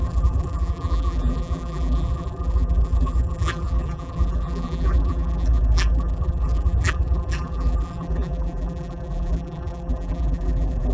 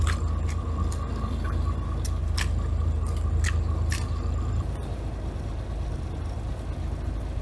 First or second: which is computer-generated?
first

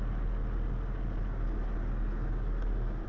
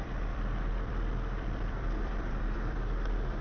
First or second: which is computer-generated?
second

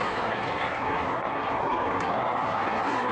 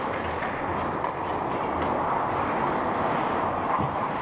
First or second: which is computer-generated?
first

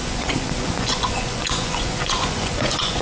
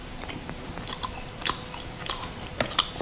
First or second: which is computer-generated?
first